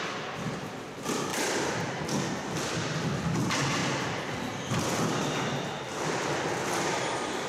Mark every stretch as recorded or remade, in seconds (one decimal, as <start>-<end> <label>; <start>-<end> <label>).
0.0-1.3 recorded; 1.3-2.0 remade; 2.0-3.8 recorded; 3.8-5.3 remade; 5.3-7.5 recorded